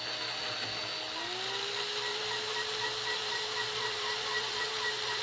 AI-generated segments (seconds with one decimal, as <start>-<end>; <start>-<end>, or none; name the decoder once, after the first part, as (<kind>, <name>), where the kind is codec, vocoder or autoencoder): 2.1-5.2 (vocoder, BigVGAN v2)